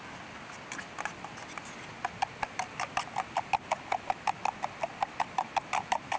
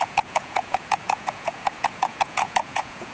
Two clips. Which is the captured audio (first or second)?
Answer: first